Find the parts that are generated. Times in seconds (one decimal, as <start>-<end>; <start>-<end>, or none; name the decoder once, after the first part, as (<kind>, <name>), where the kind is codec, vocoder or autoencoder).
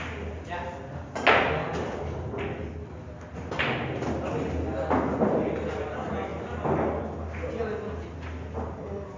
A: none